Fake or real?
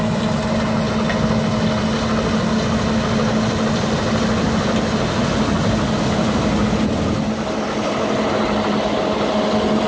real